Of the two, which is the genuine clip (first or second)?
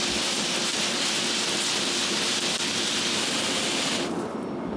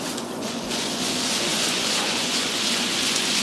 first